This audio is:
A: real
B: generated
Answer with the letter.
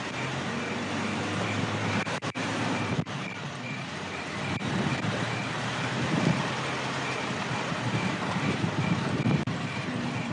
B